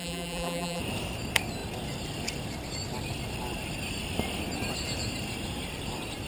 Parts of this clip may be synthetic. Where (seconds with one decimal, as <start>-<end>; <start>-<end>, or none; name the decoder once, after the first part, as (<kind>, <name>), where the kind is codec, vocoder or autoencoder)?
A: 0.0-0.8 (vocoder, BigVGAN v2)